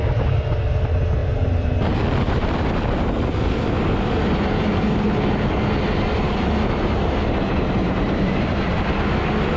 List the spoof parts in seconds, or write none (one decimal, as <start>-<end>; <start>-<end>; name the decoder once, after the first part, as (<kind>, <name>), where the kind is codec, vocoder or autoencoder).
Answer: 1.2-3.7 (vocoder, BigVGAN v2); 6.3-8.5